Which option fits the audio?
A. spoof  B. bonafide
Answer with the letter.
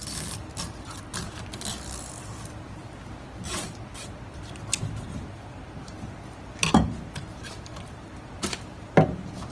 A